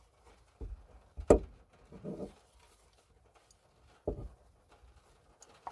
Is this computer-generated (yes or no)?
no